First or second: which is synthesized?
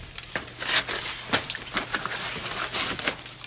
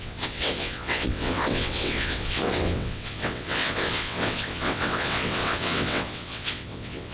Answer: second